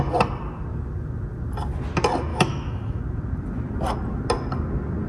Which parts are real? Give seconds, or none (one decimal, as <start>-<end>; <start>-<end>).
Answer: 0.0-2.3; 3.0-5.1